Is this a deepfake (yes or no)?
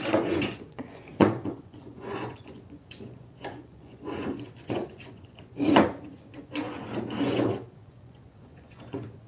yes